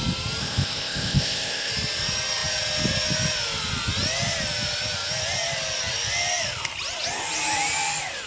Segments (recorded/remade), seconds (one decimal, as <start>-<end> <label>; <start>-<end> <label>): 0.0-0.4 recorded; 0.4-1.7 remade; 1.7-8.3 recorded